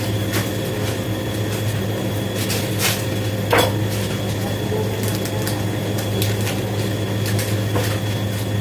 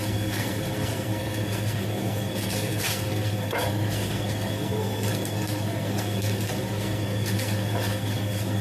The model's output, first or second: second